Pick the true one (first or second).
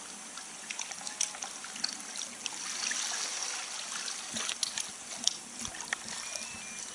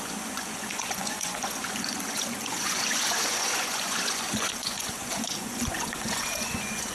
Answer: first